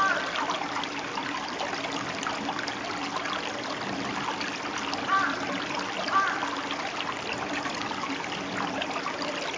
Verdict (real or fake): real